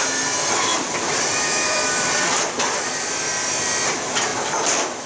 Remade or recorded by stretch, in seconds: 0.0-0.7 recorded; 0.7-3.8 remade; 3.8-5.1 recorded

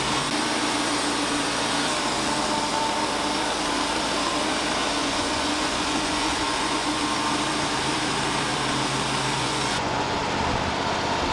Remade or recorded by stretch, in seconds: 0.0-5.0 recorded; 5.0-7.0 remade; 7.0-9.4 recorded; 9.4-10.2 remade; 10.2-11.3 recorded

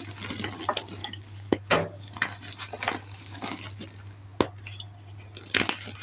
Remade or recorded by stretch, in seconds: 0.0-1.0 recorded; 1.0-2.1 remade; 2.1-3.0 recorded; 3.0-3.6 remade; 3.6-6.0 recorded

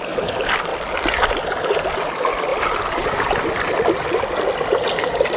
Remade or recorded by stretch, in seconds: 0.0-0.7 recorded; 0.7-1.3 remade; 1.3-5.4 recorded